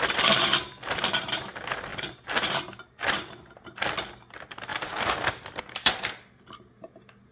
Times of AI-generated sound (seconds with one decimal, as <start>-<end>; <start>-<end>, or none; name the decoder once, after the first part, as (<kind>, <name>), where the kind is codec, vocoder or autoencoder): none